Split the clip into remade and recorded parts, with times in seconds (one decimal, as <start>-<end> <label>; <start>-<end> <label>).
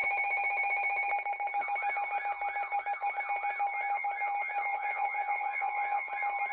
0.0-4.7 recorded; 4.7-6.1 remade; 6.1-6.5 recorded